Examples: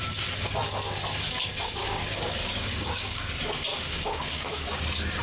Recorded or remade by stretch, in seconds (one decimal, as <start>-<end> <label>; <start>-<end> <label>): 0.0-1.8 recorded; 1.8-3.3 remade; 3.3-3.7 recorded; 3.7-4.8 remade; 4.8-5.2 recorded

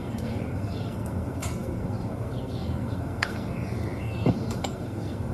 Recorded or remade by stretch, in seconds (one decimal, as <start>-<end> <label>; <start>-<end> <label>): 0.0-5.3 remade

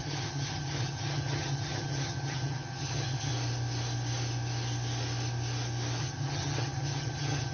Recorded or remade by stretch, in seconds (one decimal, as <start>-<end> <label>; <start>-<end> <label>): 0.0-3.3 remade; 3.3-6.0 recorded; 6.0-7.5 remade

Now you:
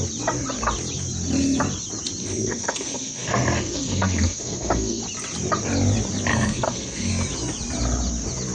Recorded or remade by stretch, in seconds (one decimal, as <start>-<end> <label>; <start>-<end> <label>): 0.0-2.2 recorded; 2.2-5.0 remade; 5.0-6.3 recorded; 6.3-7.1 remade; 7.1-8.5 recorded

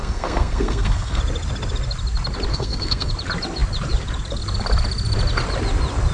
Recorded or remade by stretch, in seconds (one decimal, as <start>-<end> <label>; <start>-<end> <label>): 0.0-1.2 remade; 1.2-2.5 recorded; 2.5-3.1 remade; 3.1-6.1 recorded